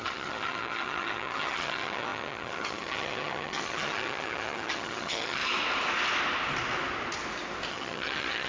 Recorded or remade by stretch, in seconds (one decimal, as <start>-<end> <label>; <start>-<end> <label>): 0.0-5.4 remade; 5.4-7.7 recorded; 7.7-8.5 remade